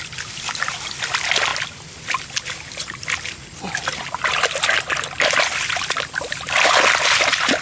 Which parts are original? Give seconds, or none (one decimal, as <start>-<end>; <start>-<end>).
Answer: 0.0-7.6